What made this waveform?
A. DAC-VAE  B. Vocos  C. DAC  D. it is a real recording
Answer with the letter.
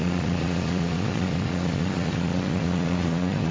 B